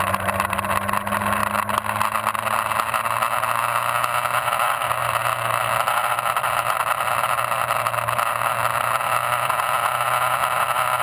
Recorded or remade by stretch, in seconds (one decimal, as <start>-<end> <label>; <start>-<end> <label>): 0.0-11.0 recorded